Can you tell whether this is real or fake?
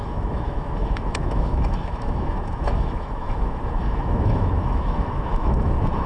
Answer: fake